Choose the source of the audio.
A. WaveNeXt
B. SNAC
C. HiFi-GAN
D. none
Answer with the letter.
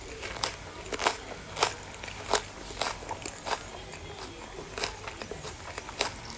D